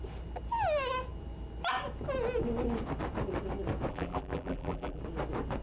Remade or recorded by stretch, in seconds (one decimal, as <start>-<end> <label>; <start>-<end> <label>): 0.0-3.9 recorded; 3.9-5.0 remade; 5.0-5.6 recorded

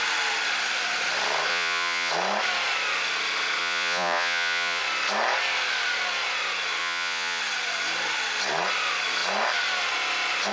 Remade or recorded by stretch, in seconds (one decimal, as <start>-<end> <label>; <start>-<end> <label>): 0.0-1.5 recorded; 1.5-2.1 remade; 2.1-3.6 recorded; 3.6-4.8 remade; 4.8-6.8 recorded; 6.8-7.4 remade; 7.4-10.5 recorded

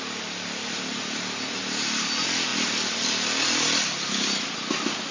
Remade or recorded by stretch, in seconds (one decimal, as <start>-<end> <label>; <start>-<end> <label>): 0.0-5.1 recorded

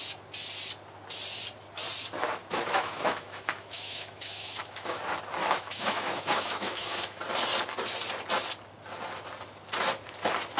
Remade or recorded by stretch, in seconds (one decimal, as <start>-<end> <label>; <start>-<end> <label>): 0.0-2.4 recorded; 2.4-5.0 remade; 5.0-5.4 recorded; 5.4-7.2 remade; 7.2-10.6 recorded

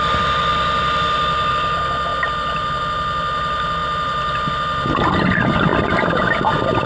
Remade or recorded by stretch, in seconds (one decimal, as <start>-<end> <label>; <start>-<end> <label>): 0.0-6.9 recorded